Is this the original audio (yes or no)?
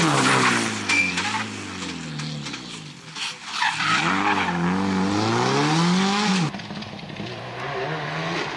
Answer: yes